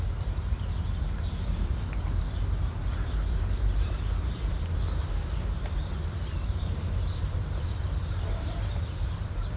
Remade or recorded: remade